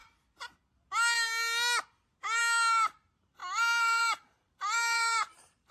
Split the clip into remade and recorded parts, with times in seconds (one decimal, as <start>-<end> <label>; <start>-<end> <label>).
0.0-3.4 recorded; 3.4-5.7 remade